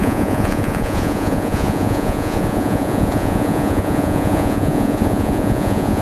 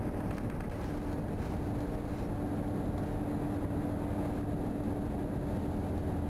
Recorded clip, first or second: second